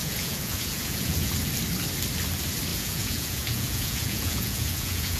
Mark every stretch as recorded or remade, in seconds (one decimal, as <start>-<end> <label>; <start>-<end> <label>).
0.0-1.3 remade; 1.3-2.7 recorded; 2.7-5.2 remade